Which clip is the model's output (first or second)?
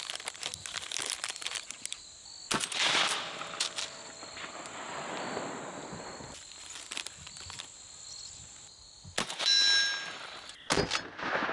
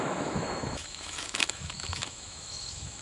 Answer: second